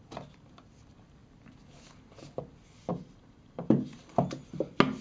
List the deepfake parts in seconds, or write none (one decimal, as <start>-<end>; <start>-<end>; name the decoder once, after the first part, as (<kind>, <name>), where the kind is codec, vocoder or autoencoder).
2.9-4.0 (vocoder, BigVGAN v2)